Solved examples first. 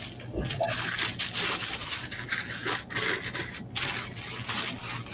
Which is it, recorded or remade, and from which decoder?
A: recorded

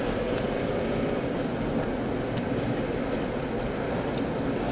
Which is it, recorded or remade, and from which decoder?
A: recorded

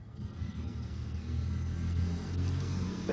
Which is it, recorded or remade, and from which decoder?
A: remade, codec, SNAC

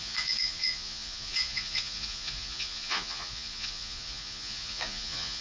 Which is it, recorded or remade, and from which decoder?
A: remade, vocoder, Vocos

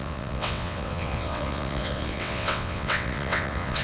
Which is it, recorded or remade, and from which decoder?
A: remade, vocoder, WaveNeXt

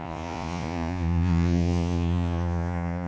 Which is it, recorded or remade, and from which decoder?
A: remade, vocoder, Vocos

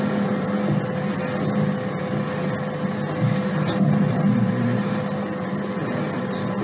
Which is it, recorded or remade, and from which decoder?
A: recorded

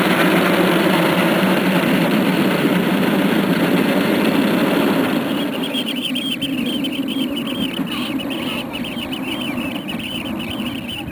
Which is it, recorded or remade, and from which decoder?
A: remade, vocoder, BigVGAN v2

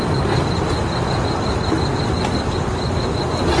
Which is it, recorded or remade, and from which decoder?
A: recorded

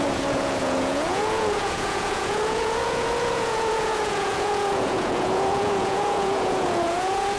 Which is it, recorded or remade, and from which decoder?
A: remade, vocoder, Vocos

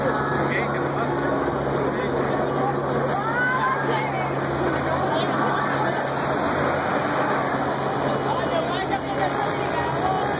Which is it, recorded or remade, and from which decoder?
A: recorded